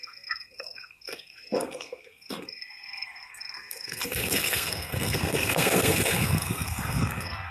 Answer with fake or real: fake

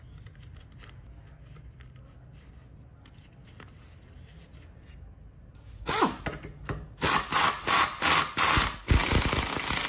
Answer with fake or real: real